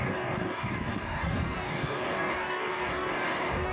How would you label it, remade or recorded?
remade